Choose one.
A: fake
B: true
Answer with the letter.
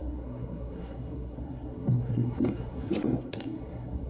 A